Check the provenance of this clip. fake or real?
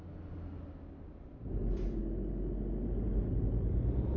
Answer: real